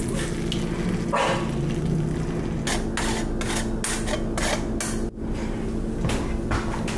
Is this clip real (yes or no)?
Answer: yes